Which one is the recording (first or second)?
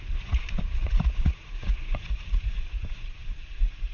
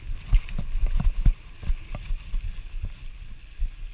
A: second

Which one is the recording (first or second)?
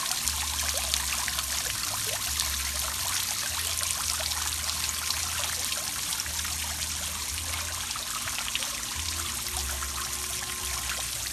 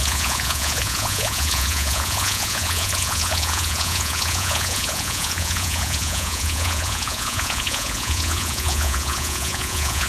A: first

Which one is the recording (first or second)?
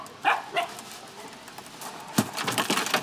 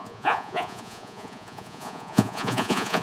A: first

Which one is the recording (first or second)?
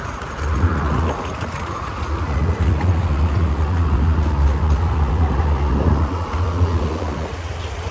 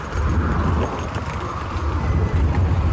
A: second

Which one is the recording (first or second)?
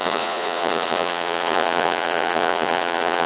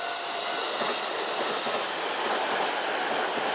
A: second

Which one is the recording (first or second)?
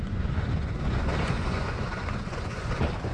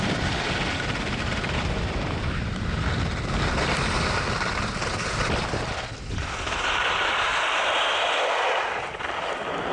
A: second